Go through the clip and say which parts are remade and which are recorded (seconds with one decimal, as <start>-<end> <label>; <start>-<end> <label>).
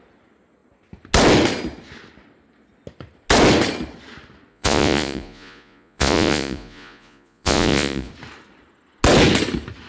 0.0-4.5 recorded; 4.5-8.1 remade; 8.1-9.9 recorded